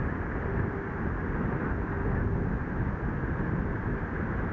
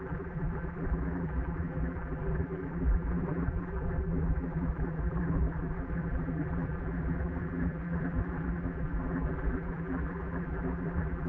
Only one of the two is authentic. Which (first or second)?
first